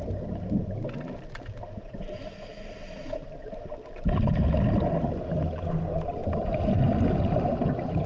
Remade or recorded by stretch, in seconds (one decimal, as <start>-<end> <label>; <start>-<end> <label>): 0.0-8.1 recorded